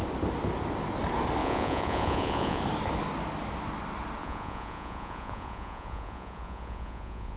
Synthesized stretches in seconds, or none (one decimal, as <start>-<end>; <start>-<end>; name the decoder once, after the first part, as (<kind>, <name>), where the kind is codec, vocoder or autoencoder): 1.4-2.6 (vocoder, Vocos); 4.2-7.4